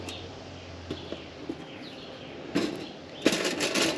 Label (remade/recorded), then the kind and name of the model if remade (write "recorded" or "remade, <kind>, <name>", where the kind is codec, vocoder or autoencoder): recorded